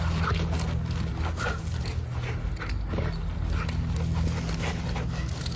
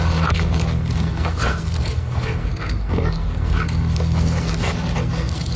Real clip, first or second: first